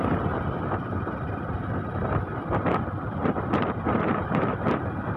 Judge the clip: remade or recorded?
remade